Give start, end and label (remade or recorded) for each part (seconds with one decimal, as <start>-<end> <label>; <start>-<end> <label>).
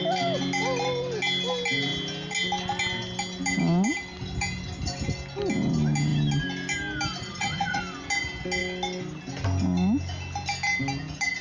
0.0-7.2 recorded; 7.2-7.8 remade; 7.8-11.4 recorded